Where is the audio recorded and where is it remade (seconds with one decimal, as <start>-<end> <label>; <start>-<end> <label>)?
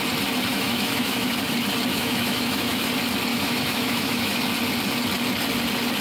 0.0-0.5 recorded; 0.5-1.3 remade; 1.3-1.9 recorded; 1.9-2.9 remade; 2.9-3.3 recorded; 3.3-4.4 remade; 4.4-6.0 recorded